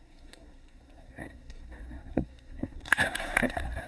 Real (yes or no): no